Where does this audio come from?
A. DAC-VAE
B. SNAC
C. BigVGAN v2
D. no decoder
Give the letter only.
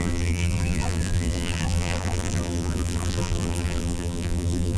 C